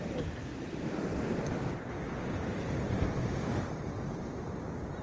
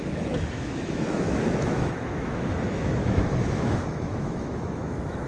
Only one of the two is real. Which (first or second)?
first